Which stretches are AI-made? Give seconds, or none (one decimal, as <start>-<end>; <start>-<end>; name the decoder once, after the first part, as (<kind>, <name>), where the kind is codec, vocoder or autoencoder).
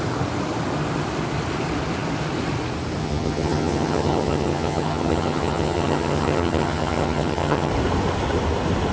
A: 3.0-7.7 (vocoder, HiFi-GAN)